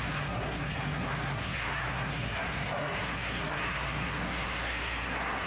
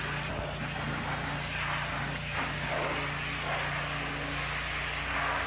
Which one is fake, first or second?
first